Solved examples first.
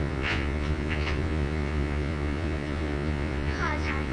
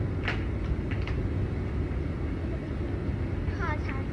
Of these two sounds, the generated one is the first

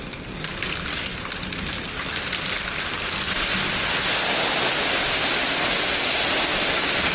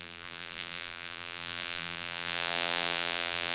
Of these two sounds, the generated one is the second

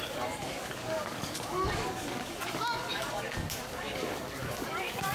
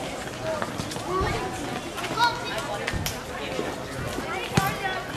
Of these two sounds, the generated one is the first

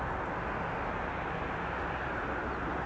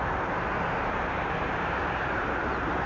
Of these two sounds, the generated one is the second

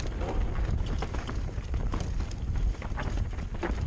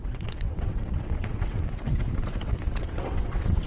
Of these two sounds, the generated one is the second